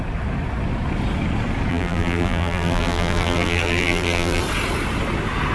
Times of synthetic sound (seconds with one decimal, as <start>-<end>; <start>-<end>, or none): 1.7-4.4